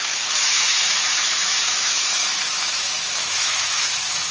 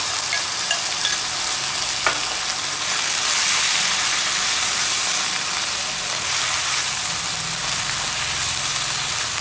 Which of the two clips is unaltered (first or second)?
second